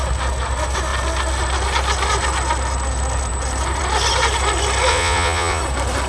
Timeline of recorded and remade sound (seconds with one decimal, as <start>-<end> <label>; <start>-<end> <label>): 0.0-4.9 recorded; 4.9-5.6 remade; 5.6-6.1 recorded